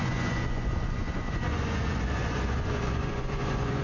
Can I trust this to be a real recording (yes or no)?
no